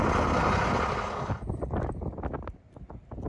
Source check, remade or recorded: recorded